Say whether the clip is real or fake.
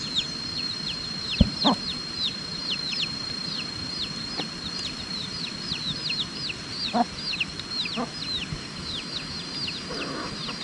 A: real